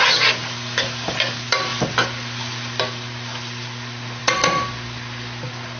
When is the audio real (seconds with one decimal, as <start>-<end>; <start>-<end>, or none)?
0.0-5.8